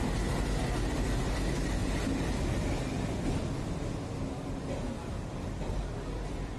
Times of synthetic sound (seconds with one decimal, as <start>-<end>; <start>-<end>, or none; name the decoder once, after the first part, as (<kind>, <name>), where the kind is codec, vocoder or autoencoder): none